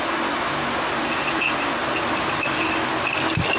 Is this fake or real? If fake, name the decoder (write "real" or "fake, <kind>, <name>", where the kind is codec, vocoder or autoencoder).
real